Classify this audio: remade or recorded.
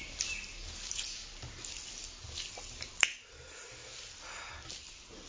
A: recorded